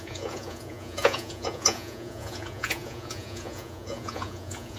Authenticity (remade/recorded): remade